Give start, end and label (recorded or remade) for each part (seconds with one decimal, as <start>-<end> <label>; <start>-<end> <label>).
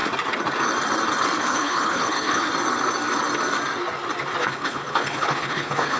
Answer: 0.0-1.4 recorded; 1.4-2.5 remade; 2.5-4.4 recorded; 4.4-6.0 remade